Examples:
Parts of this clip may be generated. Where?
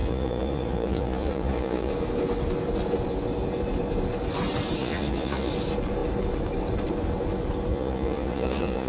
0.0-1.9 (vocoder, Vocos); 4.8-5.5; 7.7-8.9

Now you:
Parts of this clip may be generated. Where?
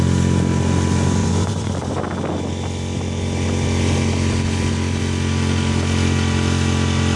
1.2-1.9 (vocoder, Vocos)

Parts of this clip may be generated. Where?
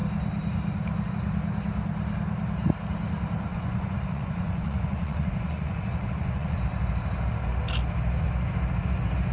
3.5-6.6 (vocoder, Vocos)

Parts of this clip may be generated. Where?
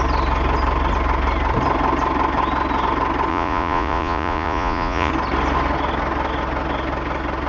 3.3-5.1 (vocoder, Vocos)